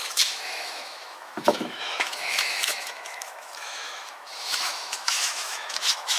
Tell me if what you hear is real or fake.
fake